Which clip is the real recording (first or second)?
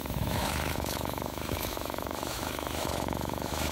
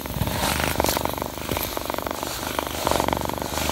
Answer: second